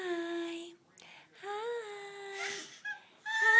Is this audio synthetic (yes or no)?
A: no